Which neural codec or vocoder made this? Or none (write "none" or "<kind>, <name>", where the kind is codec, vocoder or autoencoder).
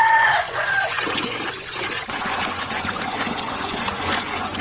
vocoder, Vocos